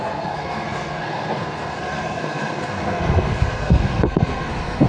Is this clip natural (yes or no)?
no